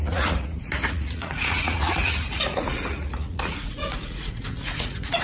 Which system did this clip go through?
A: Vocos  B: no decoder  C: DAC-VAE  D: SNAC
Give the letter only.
A